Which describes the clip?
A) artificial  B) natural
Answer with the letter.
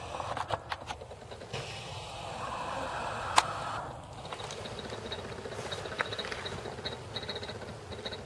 B